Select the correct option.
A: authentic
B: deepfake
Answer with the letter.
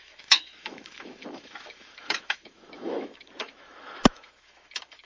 B